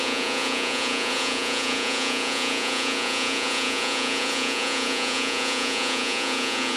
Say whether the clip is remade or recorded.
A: remade